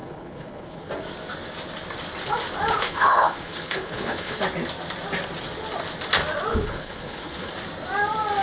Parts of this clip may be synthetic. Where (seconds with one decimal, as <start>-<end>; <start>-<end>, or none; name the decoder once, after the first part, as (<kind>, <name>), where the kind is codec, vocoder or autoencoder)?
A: 0.0-0.9 (codec, HILCodec); 2.7-4.4; 6.5-7.5

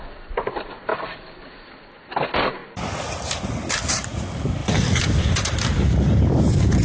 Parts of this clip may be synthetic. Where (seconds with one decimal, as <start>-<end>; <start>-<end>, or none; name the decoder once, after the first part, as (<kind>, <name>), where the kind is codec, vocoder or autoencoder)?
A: none

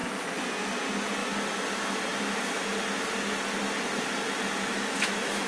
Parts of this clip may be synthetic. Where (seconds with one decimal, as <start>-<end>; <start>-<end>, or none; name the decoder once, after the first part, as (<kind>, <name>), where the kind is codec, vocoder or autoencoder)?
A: 4.7-5.5 (autoencoder, DAC-VAE)

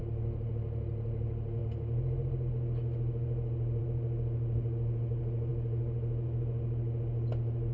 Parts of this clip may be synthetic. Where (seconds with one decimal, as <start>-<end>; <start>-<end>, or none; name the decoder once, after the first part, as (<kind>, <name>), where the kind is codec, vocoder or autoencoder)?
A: none

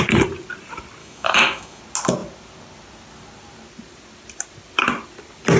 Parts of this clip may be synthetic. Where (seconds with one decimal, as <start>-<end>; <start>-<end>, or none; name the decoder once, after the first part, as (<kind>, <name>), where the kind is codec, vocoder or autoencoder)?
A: 1.0-1.8 (autoencoder, DAC-VAE)

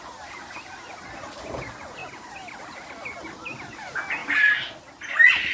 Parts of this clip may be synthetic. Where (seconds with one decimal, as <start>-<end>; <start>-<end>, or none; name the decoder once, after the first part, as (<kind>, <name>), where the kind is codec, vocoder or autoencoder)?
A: none

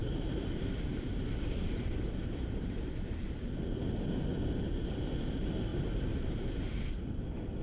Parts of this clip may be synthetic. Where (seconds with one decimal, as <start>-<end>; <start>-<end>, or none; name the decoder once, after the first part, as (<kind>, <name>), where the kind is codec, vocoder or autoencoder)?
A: 0.0-3.3 (vocoder, BigVGAN v2); 4.3-4.9; 5.7-6.3

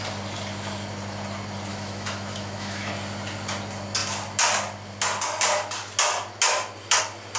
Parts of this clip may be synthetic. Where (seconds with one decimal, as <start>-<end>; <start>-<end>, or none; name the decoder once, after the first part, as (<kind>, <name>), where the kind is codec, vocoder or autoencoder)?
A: 1.7-2.9 (autoencoder, DAC-VAE)